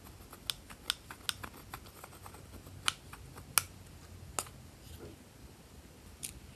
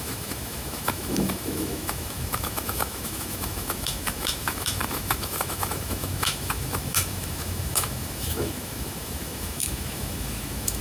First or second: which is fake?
second